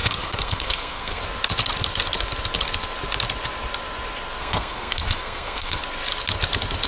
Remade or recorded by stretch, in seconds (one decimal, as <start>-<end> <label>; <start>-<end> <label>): 0.0-1.2 remade; 1.2-4.4 recorded; 4.4-5.8 remade; 5.8-6.9 recorded